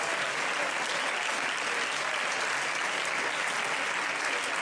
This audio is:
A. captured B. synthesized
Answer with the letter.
A